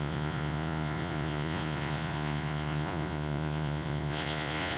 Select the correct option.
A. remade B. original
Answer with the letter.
A